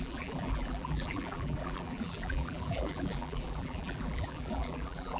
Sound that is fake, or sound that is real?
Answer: fake